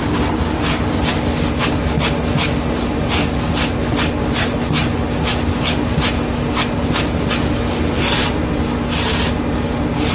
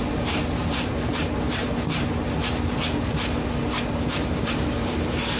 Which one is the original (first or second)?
first